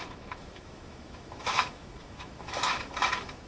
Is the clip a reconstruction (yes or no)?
yes